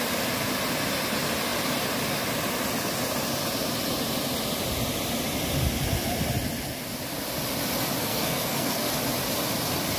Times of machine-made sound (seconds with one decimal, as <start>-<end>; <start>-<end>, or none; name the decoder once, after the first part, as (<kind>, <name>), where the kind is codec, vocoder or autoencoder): 8.0-8.9 (codec, SNAC)